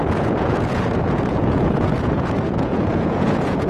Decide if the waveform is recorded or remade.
remade